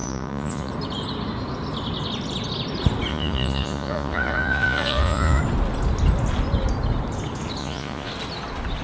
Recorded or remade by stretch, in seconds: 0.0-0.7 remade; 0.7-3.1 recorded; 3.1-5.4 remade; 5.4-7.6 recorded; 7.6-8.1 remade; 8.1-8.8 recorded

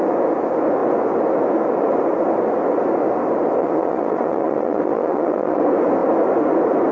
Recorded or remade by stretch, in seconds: 0.0-3.6 recorded; 3.6-5.6 remade; 5.6-6.9 recorded

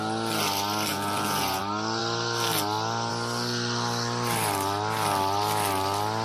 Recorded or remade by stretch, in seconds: 0.0-0.9 recorded; 0.9-1.6 remade; 1.6-6.2 recorded

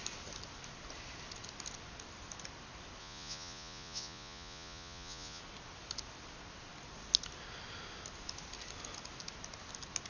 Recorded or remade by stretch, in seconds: 0.0-3.0 recorded; 3.0-5.4 remade; 5.4-10.1 recorded

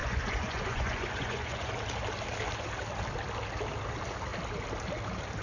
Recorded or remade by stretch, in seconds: 0.0-1.7 remade; 1.7-5.4 recorded

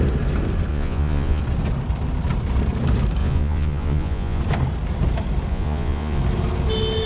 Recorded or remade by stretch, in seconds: 0.0-0.7 recorded; 0.7-1.4 remade; 1.4-3.2 recorded; 3.2-4.4 remade; 4.4-5.5 recorded; 5.5-6.2 remade; 6.2-7.1 recorded